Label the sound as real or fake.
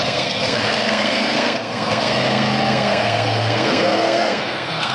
fake